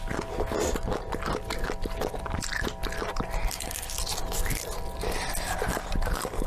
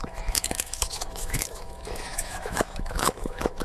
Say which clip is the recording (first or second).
first